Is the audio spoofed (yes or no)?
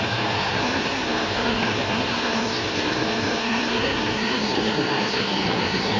yes